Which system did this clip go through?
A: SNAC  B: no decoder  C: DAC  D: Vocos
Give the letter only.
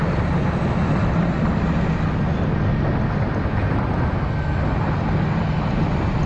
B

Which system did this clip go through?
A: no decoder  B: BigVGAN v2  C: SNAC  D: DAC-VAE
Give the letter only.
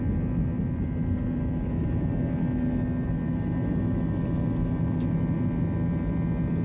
A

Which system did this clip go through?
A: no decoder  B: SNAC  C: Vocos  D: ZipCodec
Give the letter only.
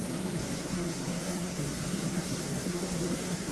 B